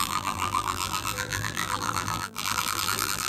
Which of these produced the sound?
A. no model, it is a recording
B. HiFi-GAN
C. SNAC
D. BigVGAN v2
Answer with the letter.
D